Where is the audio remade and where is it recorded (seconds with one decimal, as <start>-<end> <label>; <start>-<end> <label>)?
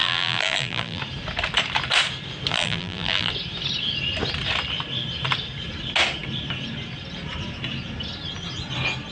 0.0-1.0 remade; 1.0-2.5 recorded; 2.5-3.3 remade; 3.3-9.1 recorded